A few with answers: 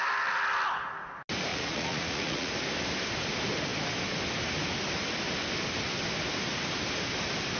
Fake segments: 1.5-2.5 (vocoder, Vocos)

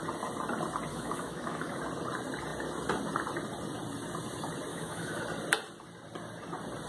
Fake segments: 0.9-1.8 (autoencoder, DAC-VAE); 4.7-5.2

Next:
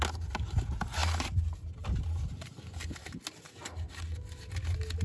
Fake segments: none

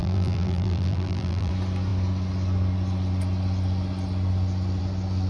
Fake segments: 0.0-1.5 (vocoder, BigVGAN v2)

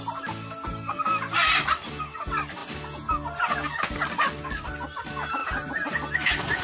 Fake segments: none

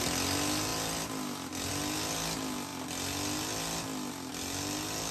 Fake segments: none